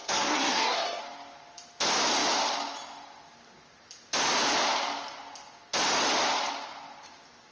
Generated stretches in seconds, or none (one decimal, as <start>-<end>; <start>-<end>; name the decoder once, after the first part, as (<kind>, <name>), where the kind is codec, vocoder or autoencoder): 0.0-1.0 (codec, SNAC)